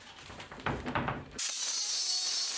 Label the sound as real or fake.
fake